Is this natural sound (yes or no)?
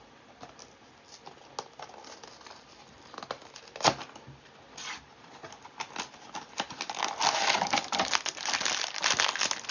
yes